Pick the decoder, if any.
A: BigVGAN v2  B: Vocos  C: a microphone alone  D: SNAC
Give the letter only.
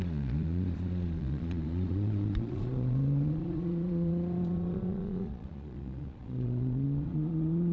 B